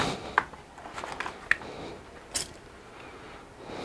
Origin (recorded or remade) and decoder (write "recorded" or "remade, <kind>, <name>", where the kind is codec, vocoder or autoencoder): recorded